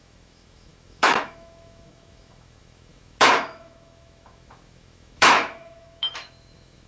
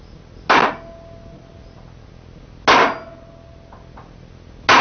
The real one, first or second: second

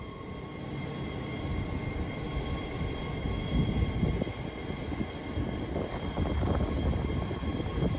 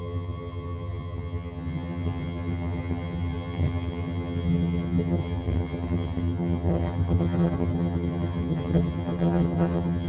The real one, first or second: first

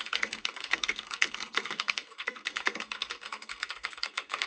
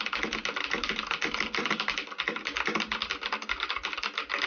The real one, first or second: second